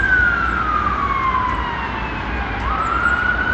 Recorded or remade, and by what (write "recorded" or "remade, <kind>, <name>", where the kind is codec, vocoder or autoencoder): recorded